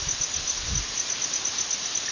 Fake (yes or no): no